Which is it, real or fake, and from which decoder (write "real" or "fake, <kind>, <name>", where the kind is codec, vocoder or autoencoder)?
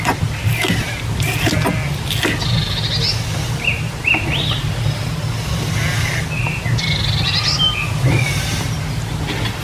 real